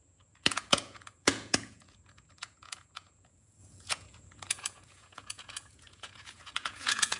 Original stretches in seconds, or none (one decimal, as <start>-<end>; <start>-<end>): none